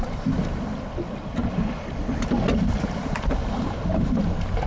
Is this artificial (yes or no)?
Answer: no